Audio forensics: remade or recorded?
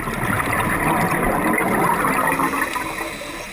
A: recorded